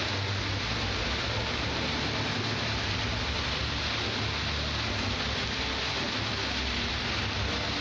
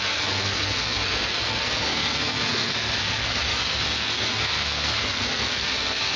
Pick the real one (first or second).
first